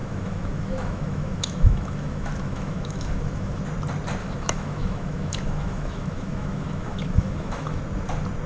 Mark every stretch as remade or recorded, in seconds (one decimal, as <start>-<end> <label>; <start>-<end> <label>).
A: 0.0-3.6 remade; 3.6-4.2 recorded; 4.2-7.8 remade; 7.8-8.5 recorded